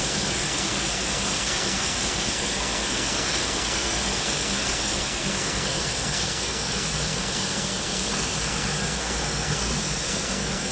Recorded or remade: remade